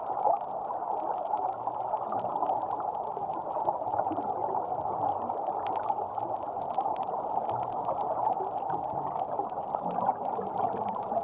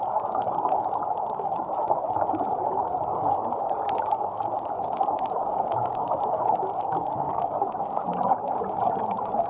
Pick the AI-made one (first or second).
second